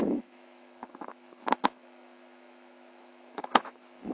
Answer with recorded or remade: remade